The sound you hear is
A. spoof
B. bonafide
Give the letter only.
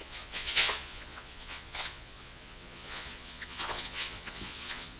A